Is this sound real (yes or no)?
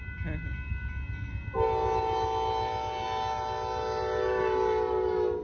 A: yes